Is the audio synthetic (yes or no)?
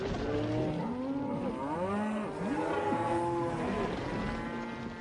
no